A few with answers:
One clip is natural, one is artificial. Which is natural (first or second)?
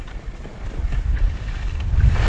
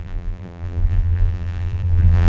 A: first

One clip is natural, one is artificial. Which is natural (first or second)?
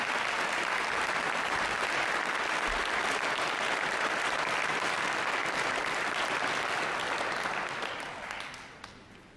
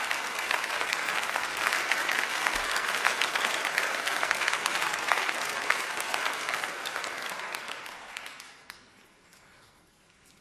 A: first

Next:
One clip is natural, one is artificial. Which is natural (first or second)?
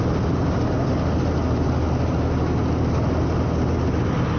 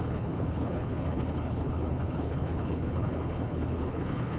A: first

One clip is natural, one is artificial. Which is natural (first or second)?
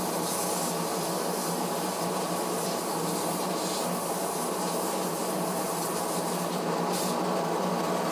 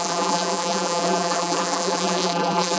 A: first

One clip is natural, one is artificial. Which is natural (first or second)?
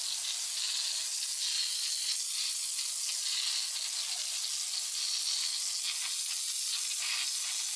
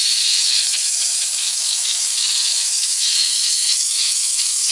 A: first